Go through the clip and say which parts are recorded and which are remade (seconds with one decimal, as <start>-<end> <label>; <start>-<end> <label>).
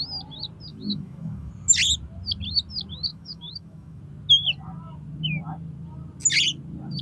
0.0-0.7 recorded; 0.7-1.5 remade; 1.5-3.1 recorded; 3.1-4.0 remade; 4.0-7.0 recorded